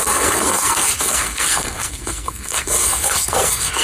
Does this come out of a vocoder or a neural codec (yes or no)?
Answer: yes